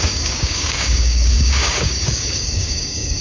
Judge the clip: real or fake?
fake